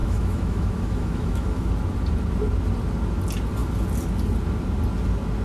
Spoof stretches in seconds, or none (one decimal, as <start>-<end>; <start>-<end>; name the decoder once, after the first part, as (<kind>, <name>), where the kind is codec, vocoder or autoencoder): 0.0-1.7 (autoencoder, DAC-VAE)

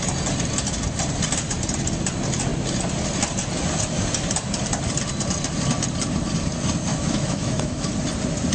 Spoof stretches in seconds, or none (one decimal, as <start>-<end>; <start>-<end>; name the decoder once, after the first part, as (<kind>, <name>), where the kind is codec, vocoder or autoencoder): 6.9-7.9 (autoencoder, DAC-VAE)